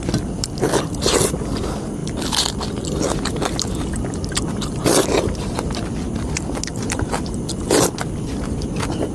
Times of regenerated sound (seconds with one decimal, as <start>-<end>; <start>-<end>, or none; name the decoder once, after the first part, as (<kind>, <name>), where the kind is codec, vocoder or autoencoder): 6.7-7.5 (vocoder, BigVGAN v2)